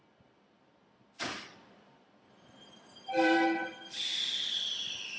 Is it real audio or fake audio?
real